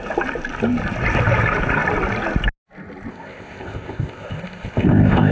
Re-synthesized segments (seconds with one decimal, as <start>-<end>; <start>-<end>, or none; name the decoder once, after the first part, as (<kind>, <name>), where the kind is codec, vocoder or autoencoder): 3.1-5.3 (codec, ZipCodec)

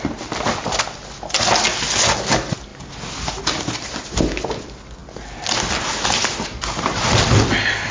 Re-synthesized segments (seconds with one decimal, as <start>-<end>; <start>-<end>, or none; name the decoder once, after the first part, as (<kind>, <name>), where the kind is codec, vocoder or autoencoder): none

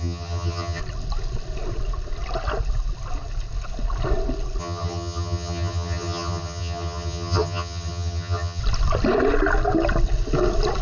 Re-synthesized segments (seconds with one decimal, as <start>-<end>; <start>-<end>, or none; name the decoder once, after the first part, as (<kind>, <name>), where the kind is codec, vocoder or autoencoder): 0.0-0.8 (vocoder, HiFi-GAN); 4.6-8.6

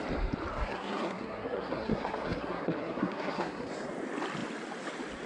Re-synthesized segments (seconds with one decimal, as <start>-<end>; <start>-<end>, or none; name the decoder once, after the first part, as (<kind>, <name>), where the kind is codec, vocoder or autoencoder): 0.5-3.7 (codec, SNAC)

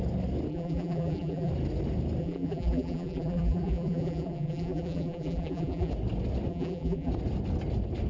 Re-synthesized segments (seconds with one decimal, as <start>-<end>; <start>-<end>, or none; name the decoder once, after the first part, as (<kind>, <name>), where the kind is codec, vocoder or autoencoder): 0.5-1.5 (vocoder, BigVGAN v2); 2.2-5.9; 6.5-7.1

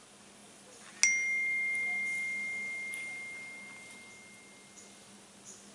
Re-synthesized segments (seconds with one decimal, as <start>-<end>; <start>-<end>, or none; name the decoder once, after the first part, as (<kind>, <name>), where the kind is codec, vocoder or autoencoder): none

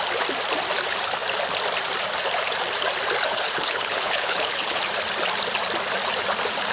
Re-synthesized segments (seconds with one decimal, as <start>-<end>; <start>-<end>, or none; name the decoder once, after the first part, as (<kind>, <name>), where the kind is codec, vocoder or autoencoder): 3.3-4.8 (codec, HILCodec)